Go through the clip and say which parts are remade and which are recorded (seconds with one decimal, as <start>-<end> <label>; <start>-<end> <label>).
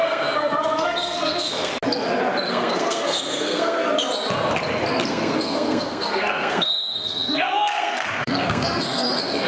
0.0-1.7 remade; 1.7-2.5 recorded; 2.5-3.8 remade; 3.8-5.1 recorded; 5.1-9.5 remade